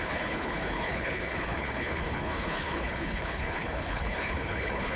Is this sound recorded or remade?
remade